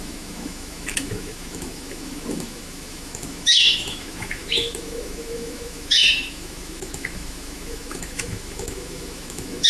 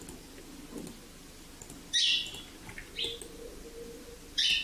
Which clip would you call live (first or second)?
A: second